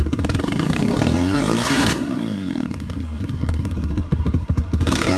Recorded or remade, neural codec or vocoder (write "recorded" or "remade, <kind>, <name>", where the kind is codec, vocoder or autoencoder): remade, codec, SNAC